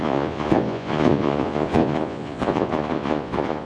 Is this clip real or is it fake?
fake